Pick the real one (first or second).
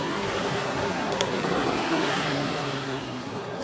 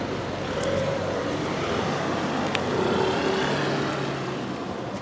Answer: second